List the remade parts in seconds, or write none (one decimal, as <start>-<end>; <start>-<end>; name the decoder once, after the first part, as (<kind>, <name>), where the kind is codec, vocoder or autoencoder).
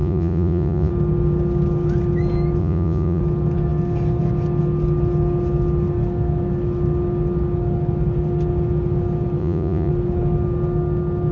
0.0-0.9 (vocoder, Vocos); 2.6-3.2; 9.4-9.9